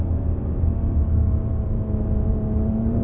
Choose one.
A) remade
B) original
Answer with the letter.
A